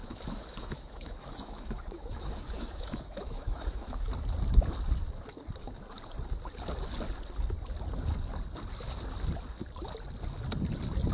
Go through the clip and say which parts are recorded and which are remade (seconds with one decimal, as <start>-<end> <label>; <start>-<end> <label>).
0.0-4.1 remade; 4.1-11.1 recorded